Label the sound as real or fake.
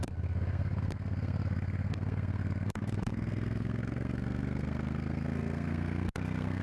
fake